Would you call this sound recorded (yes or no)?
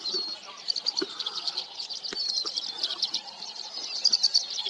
yes